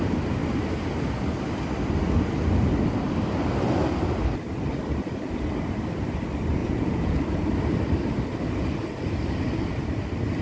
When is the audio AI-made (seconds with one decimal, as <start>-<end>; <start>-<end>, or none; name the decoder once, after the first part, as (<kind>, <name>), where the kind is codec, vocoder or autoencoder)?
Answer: 6.6-7.2 (vocoder, Vocos)